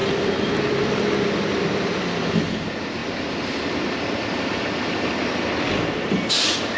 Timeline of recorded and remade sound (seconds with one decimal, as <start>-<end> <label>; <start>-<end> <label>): 0.0-6.8 recorded

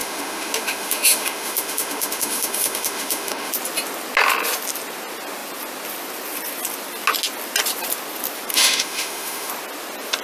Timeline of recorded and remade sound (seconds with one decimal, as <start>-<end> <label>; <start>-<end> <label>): 0.0-3.5 remade; 3.5-8.5 recorded; 8.5-9.5 remade; 9.5-10.2 recorded

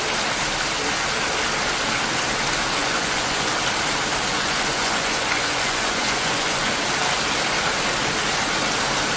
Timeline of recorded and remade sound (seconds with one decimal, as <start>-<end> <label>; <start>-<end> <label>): 0.0-2.8 recorded; 2.8-3.5 remade; 3.5-4.3 recorded; 4.3-6.7 remade; 6.7-9.2 recorded

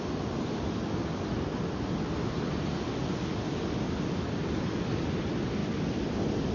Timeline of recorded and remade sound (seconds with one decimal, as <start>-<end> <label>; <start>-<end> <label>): 0.0-1.5 remade; 1.5-4.0 recorded; 4.0-6.5 remade

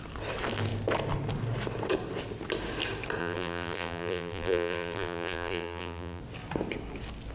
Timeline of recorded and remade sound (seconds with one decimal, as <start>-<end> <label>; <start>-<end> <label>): 0.0-3.2 recorded; 3.2-6.2 remade; 6.2-7.3 recorded

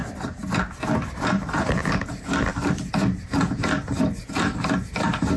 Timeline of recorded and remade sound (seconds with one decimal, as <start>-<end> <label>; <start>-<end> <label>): 0.0-1.1 recorded; 1.1-5.4 remade